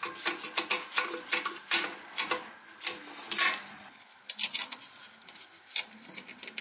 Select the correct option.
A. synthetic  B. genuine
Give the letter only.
B